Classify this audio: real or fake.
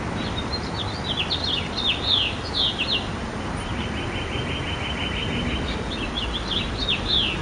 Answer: real